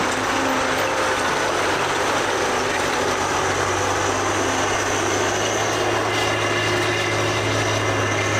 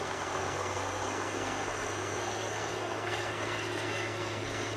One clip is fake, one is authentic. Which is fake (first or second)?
second